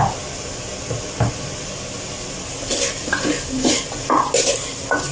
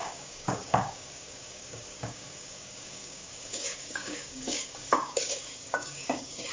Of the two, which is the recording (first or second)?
first